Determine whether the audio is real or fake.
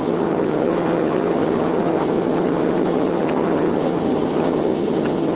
fake